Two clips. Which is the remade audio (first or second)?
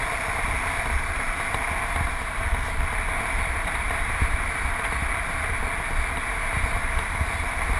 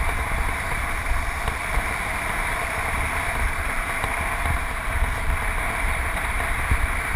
second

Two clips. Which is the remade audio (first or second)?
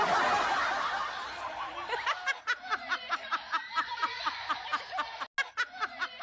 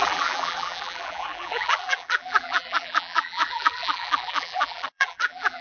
second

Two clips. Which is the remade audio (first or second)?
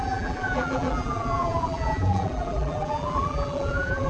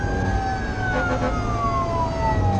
first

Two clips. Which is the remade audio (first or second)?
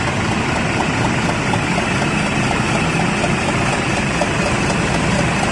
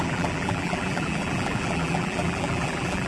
second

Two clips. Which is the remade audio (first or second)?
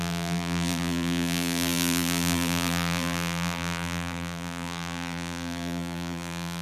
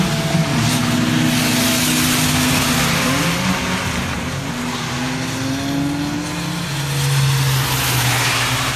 first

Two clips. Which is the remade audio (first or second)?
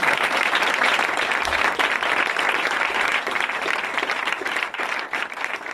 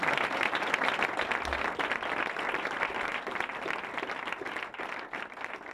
first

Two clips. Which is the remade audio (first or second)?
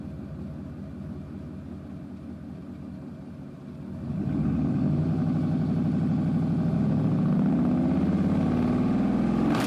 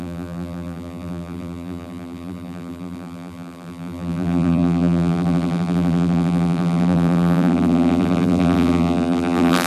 second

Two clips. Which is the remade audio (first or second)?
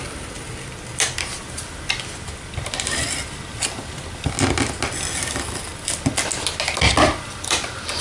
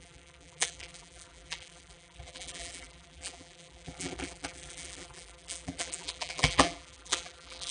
second